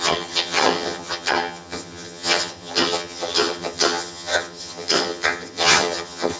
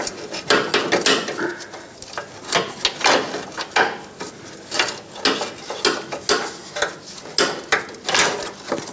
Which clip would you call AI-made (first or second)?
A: first